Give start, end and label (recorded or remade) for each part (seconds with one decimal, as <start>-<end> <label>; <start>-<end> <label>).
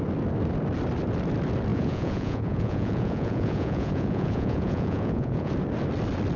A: 0.0-1.7 recorded; 1.7-5.5 remade; 5.5-6.4 recorded